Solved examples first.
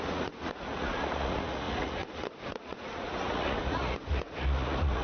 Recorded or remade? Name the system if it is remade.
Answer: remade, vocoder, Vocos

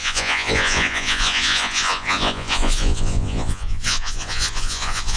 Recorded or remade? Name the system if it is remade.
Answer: remade, vocoder, Vocos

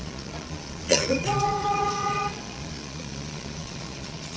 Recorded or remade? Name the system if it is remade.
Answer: remade, vocoder, Vocos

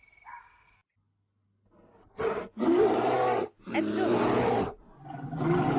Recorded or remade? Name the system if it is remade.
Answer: recorded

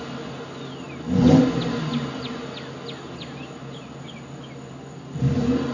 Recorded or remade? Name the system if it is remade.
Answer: recorded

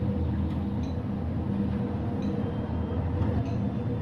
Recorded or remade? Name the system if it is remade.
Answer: recorded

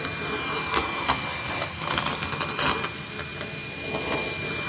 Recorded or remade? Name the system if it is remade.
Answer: recorded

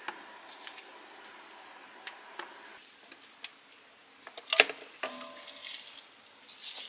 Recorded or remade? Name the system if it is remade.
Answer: recorded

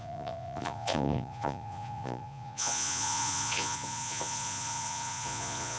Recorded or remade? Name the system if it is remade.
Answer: remade, vocoder, Vocos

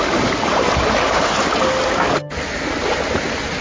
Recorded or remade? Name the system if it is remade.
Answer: recorded